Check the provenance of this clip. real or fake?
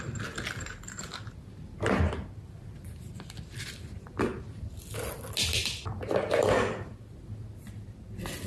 real